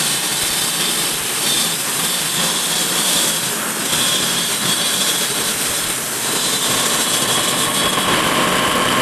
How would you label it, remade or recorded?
remade